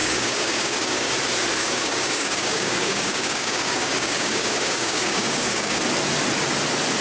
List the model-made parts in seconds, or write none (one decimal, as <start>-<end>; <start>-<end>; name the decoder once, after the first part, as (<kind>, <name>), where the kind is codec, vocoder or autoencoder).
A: 0.0-1.1 (codec, DAC); 1.6-5.8